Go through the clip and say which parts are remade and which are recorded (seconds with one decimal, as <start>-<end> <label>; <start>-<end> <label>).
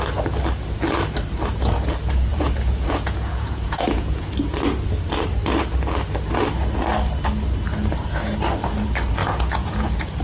0.0-2.3 recorded; 2.3-4.3 remade; 4.3-9.2 recorded; 9.2-10.2 remade